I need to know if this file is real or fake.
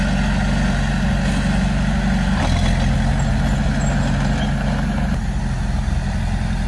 real